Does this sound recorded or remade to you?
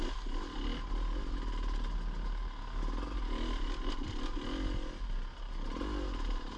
recorded